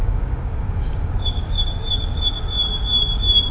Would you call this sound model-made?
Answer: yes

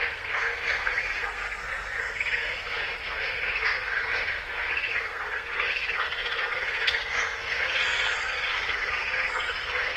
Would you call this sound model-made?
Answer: yes